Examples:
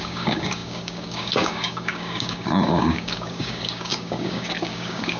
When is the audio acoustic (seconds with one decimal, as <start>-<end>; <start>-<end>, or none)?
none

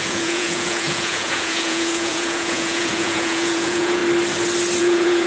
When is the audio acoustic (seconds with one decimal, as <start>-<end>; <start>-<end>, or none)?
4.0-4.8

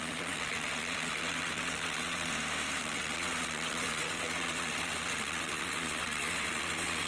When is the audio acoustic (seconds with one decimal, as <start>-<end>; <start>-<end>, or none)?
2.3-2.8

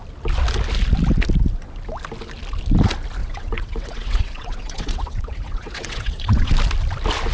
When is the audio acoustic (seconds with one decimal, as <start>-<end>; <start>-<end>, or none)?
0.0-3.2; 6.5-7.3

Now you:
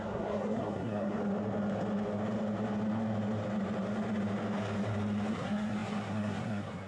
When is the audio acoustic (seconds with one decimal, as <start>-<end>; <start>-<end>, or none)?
1.2-5.3

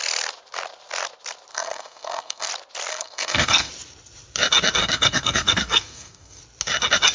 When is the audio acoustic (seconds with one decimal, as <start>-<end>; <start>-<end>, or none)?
0.0-1.5; 2.5-2.9; 3.7-4.8; 6.4-7.1